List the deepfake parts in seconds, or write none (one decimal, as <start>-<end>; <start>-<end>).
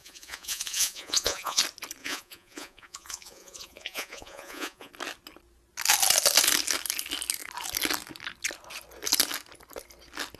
0.0-1.6; 2.0-4.9